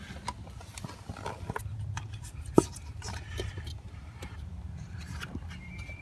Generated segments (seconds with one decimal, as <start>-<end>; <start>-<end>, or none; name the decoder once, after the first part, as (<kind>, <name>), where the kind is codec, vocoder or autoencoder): 1.7-5.3 (vocoder, BigVGAN v2)